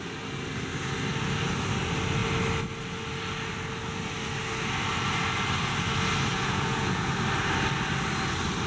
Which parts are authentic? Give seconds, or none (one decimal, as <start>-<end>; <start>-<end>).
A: 0.0-6.3; 7.1-8.7